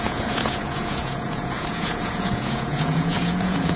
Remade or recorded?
remade